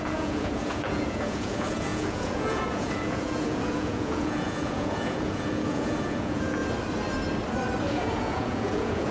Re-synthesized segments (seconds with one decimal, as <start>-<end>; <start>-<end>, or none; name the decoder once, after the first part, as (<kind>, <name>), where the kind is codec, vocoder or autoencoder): 0.0-6.6 (vocoder, Vocos); 7.8-9.1